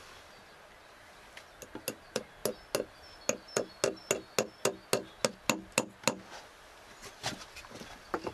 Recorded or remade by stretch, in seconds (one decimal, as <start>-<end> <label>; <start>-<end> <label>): 0.0-8.3 recorded